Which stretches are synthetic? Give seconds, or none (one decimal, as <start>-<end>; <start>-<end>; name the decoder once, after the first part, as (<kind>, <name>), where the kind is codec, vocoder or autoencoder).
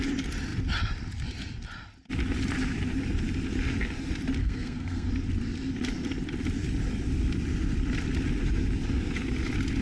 4.4-5.1 (codec, SNAC)